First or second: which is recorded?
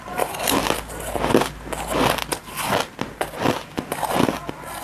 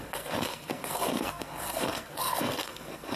first